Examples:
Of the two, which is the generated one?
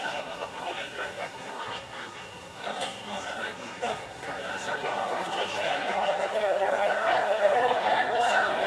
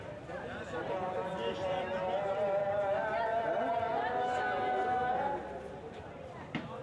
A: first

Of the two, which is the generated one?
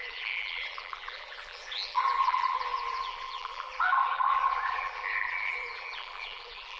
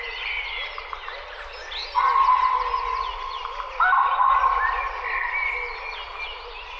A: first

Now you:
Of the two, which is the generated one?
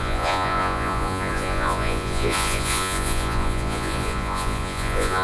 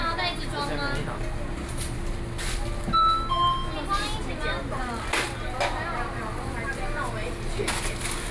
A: first